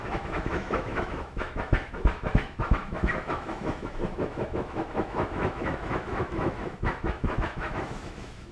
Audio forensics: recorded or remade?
remade